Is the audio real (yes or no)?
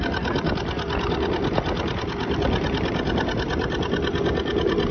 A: yes